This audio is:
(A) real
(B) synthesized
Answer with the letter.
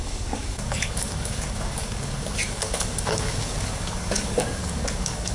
B